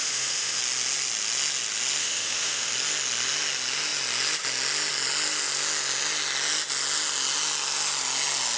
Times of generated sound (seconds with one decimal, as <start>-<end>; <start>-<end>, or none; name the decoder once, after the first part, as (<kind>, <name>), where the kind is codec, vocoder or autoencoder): 0.0-0.6 (autoencoder, DAC-VAE); 2.0-2.7